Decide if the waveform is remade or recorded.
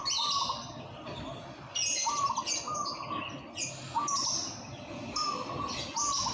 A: recorded